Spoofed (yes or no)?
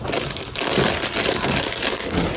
no